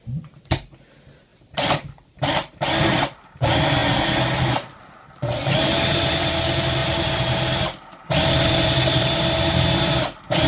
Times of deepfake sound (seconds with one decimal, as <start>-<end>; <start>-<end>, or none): 0.0-3.8; 4.5-10.5